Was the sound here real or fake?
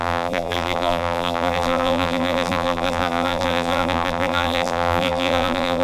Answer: fake